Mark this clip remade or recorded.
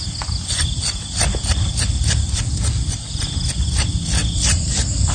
recorded